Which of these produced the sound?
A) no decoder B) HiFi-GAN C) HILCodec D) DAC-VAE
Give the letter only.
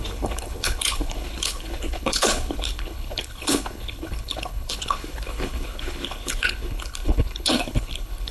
C